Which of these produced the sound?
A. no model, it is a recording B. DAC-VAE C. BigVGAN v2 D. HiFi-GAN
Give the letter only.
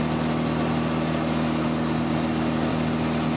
A